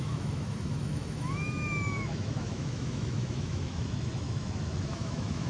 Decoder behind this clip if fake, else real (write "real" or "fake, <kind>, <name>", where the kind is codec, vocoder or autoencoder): fake, autoencoder, DAC-VAE